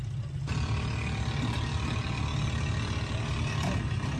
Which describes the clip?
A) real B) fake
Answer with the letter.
A